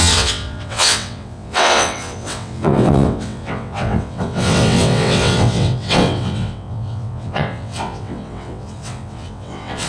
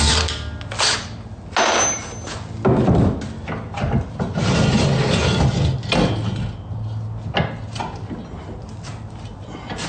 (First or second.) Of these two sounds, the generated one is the first